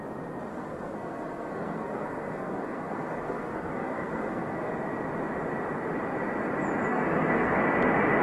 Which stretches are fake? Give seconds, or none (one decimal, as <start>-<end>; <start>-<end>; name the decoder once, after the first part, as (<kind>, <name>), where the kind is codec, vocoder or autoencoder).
0.5-4.7 (codec, SNAC); 6.9-7.6